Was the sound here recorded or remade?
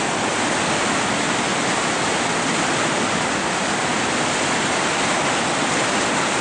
recorded